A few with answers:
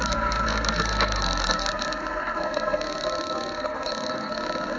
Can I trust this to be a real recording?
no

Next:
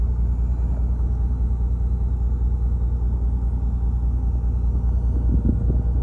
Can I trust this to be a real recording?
yes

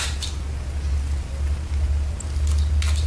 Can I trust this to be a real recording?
yes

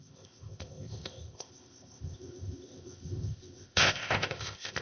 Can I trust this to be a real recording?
no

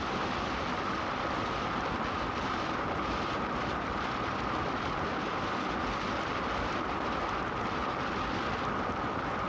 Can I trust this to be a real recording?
yes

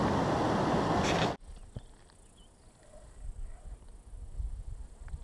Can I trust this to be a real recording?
yes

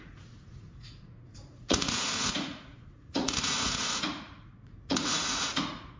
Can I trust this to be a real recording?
no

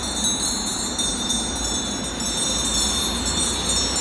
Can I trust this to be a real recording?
yes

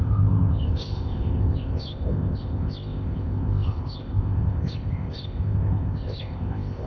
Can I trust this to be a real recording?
no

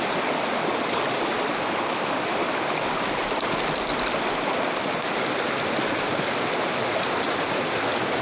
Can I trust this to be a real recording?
yes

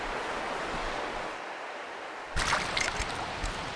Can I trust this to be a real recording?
yes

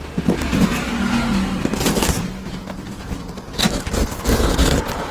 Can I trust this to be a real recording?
yes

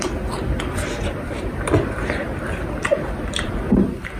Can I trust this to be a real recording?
no